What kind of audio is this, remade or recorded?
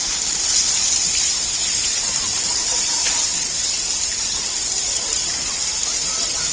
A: remade